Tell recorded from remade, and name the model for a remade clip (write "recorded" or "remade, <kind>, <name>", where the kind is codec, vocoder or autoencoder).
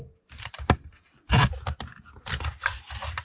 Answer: recorded